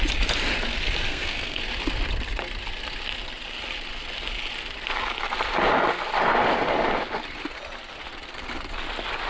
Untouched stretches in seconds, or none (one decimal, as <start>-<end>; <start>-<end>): 0.0-1.1; 1.6-9.3